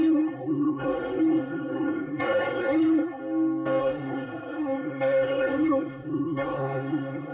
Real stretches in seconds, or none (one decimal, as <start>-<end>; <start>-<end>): 3.2-3.8